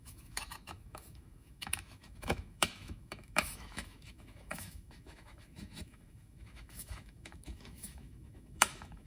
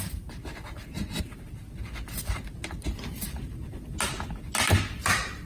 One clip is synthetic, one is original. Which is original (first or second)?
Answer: second